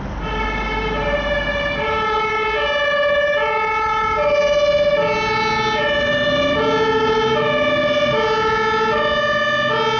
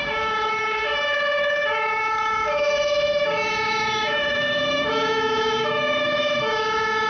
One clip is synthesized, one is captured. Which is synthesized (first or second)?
second